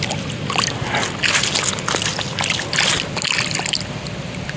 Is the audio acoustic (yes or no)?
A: yes